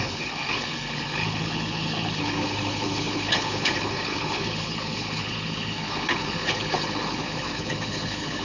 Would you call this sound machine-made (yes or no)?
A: yes